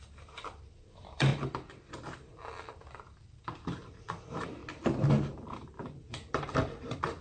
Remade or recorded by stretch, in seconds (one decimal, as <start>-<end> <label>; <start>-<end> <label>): 0.0-4.6 remade; 4.6-5.4 recorded; 5.4-7.2 remade